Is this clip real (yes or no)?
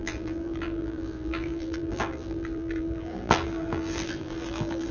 no